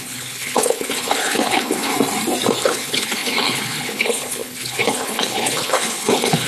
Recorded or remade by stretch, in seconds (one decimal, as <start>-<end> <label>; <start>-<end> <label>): 0.0-1.9 remade; 1.9-2.5 recorded; 2.5-6.5 remade